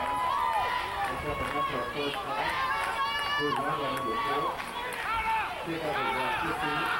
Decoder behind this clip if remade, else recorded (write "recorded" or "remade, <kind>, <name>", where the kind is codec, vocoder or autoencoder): recorded